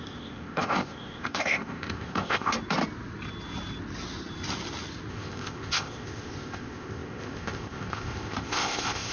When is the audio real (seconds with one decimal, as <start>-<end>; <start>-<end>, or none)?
2.5-5.1